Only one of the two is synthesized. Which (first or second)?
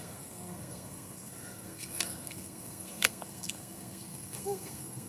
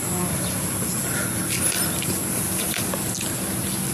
first